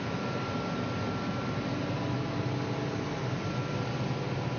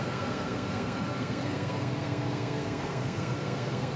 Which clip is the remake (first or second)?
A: second